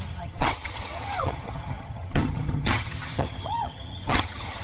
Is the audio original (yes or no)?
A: no